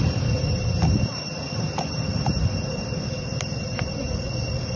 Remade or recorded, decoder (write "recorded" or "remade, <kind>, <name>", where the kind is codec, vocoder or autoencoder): recorded